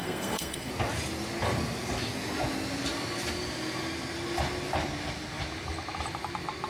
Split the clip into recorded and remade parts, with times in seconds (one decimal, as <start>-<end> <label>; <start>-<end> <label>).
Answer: 0.0-0.7 remade; 0.7-6.7 recorded